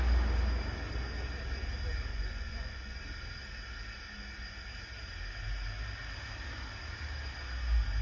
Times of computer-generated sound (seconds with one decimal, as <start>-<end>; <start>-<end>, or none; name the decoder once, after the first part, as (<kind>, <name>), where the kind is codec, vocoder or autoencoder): 2.1-3.0 (vocoder, Vocos)